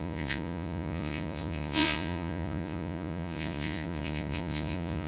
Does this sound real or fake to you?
fake